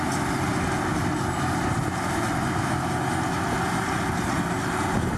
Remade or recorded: recorded